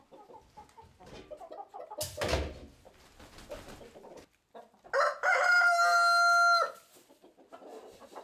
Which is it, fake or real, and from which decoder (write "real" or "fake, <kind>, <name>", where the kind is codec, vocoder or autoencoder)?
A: real